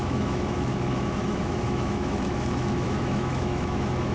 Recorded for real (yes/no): no